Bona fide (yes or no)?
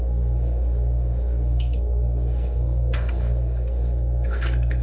no